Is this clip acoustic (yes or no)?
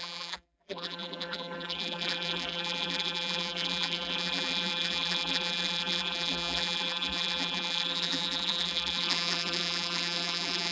no